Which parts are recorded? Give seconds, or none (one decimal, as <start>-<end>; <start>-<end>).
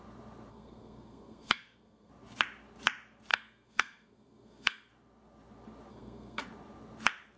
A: 0.0-0.5; 2.1-3.3; 4.9-5.9; 6.4-7.4